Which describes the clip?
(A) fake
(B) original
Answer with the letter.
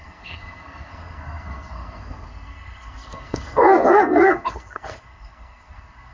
A